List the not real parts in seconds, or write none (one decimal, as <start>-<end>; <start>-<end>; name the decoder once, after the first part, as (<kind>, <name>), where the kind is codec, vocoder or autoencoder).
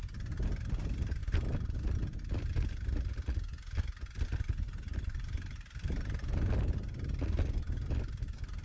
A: none